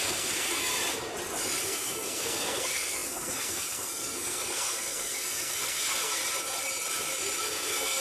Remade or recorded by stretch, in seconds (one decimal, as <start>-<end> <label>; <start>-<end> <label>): 0.0-0.7 remade; 0.7-1.6 recorded; 1.6-6.2 remade; 6.2-7.4 recorded; 7.4-8.0 remade